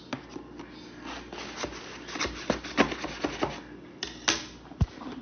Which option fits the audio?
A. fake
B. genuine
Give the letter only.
B